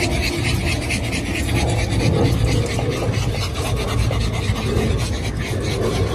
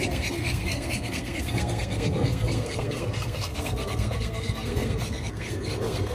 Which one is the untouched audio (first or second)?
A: first